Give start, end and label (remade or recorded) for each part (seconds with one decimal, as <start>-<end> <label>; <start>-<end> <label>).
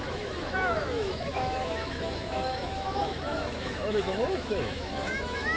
0.0-5.6 remade